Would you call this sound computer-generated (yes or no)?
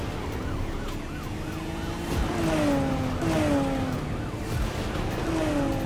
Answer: no